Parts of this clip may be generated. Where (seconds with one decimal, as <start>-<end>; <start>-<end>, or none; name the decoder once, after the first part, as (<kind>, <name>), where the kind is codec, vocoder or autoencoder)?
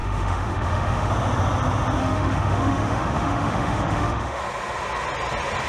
0.0-1.1 (autoencoder, DAC-VAE); 2.0-4.4